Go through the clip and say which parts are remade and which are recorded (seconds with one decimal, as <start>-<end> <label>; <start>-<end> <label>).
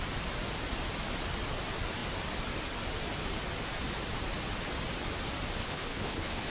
0.0-5.6 recorded; 5.6-6.5 remade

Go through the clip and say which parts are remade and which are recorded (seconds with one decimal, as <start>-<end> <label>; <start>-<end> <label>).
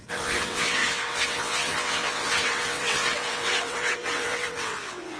0.0-5.2 remade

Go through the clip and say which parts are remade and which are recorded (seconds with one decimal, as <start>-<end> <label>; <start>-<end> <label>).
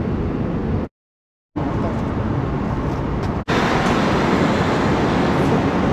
0.0-5.9 recorded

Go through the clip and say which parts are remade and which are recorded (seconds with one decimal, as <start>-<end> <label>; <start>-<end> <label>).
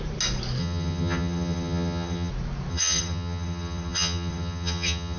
0.0-0.6 recorded; 0.6-2.3 remade; 2.3-2.7 recorded; 2.7-5.2 remade